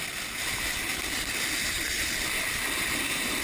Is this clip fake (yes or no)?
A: no